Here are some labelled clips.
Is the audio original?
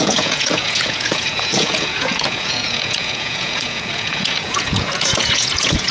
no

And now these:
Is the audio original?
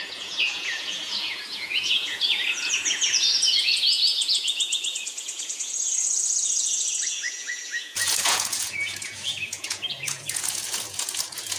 no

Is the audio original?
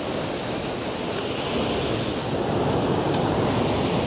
yes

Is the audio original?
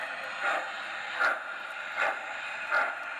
yes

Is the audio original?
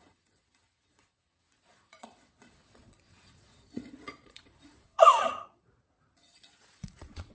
no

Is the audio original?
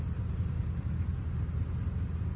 yes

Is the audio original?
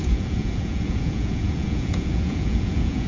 no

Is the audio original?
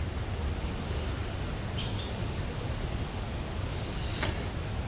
yes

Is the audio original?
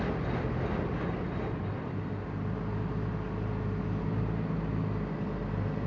yes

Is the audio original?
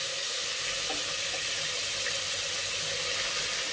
yes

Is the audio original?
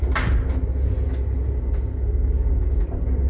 yes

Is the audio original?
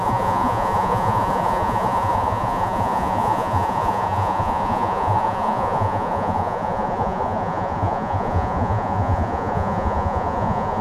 no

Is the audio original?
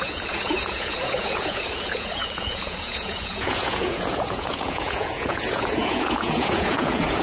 no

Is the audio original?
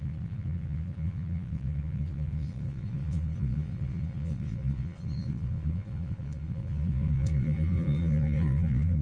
no